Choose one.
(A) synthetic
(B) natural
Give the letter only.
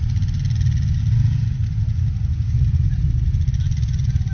B